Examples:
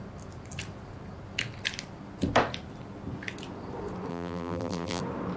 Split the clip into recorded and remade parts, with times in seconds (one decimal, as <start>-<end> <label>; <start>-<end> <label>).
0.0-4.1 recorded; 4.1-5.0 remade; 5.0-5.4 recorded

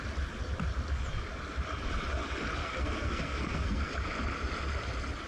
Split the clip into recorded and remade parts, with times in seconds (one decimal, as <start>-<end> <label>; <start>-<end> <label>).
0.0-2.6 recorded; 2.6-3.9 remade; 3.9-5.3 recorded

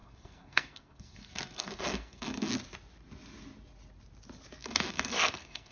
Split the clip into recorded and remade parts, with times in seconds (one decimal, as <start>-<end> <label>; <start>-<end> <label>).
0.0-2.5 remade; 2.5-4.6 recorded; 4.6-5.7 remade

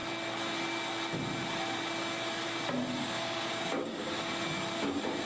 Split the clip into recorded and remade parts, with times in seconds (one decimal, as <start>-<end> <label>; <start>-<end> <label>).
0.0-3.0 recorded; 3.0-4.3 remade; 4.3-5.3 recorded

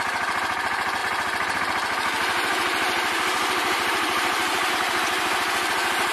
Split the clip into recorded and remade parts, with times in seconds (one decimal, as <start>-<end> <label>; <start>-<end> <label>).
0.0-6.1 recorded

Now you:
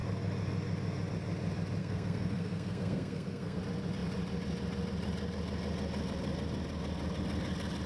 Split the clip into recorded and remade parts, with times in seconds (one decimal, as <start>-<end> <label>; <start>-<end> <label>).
0.0-1.8 recorded; 1.8-3.6 remade; 3.6-7.9 recorded